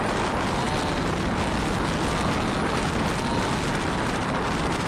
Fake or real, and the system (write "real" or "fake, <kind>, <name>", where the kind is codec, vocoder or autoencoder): real